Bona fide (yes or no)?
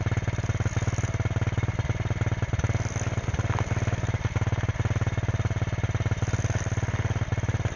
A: yes